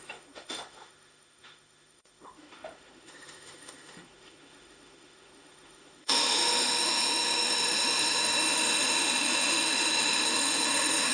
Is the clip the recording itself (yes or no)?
no